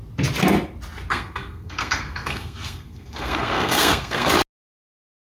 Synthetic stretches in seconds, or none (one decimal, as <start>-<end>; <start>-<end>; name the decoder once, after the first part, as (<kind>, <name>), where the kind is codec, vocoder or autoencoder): 1.1-4.3 (codec, SNAC)